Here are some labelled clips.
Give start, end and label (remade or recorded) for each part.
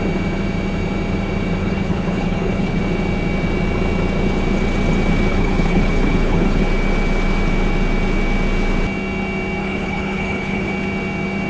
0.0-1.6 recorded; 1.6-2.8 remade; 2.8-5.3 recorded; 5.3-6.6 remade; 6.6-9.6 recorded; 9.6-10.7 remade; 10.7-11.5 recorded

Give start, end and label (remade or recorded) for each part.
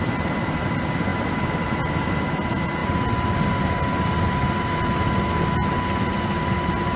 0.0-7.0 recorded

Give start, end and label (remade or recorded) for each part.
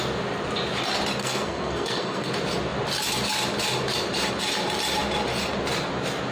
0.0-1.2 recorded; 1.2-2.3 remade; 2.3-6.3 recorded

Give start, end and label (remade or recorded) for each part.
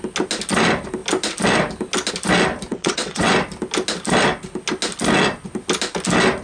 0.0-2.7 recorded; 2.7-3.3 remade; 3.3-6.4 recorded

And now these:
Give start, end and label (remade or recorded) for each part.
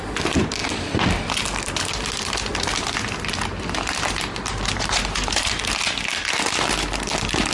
0.0-4.5 recorded; 4.5-5.6 remade; 5.6-7.5 recorded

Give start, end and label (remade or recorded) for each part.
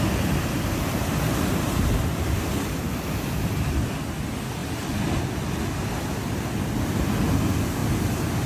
0.0-8.5 recorded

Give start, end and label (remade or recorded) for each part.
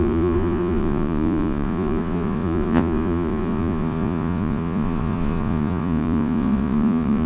0.0-7.3 remade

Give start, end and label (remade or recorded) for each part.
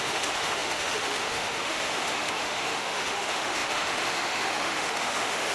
0.0-5.5 remade